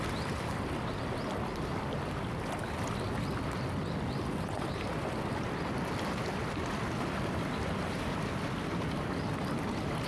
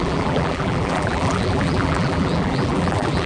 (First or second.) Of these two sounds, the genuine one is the first